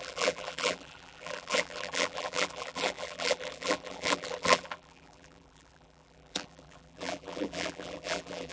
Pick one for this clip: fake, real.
fake